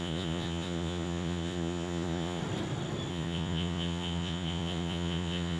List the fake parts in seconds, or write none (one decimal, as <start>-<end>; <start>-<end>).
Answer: 0.0-2.4; 3.1-5.6